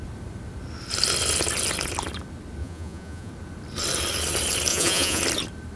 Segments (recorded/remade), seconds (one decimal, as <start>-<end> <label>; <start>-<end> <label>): 0.0-2.6 recorded; 2.6-3.3 remade; 3.3-4.7 recorded; 4.7-5.2 remade; 5.2-5.8 recorded